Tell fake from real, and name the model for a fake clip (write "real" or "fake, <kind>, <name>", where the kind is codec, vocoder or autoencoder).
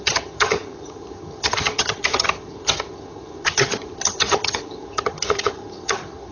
fake, vocoder, HiFi-GAN